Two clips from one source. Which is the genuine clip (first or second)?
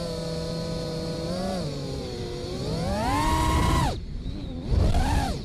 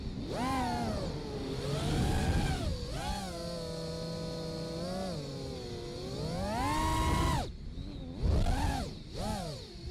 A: second